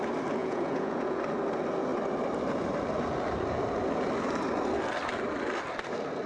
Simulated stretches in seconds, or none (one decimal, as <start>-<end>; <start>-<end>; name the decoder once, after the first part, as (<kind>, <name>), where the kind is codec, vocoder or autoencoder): 0.4-1.2 (vocoder, Vocos)